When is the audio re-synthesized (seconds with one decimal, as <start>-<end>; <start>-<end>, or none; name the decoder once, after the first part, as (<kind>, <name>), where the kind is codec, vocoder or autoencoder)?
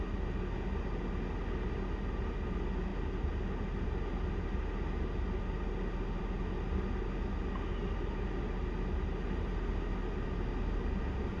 none